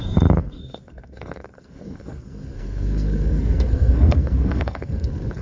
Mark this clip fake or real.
fake